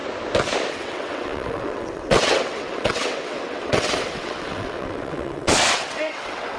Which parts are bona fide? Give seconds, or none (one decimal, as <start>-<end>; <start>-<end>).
0.0-0.7